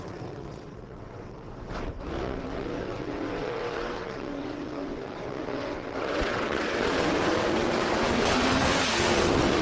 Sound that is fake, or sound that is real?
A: fake